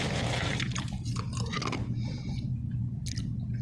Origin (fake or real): real